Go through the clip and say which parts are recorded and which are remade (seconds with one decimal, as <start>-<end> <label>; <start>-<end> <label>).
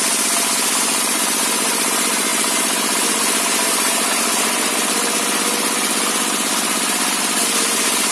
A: 0.0-8.1 recorded